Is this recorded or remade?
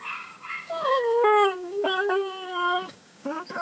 remade